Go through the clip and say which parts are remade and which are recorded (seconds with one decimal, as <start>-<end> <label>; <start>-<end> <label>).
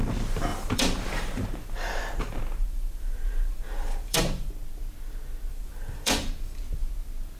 0.0-0.5 recorded; 0.5-4.5 remade; 4.5-5.5 recorded; 5.5-6.3 remade; 6.3-7.4 recorded